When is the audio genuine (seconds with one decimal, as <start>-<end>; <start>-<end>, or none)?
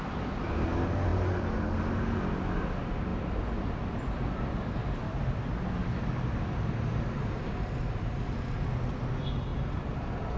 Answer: 0.0-10.4